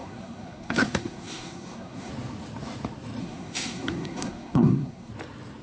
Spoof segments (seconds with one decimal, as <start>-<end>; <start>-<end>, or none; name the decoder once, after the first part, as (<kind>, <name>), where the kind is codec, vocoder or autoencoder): 0.0-2.1 (codec, SNAC); 3.2-5.1